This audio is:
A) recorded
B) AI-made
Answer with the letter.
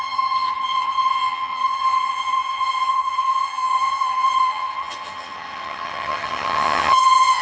B